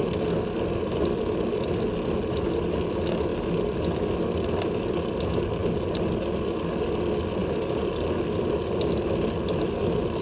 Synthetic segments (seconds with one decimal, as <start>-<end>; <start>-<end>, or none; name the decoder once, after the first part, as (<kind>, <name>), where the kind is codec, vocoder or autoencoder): none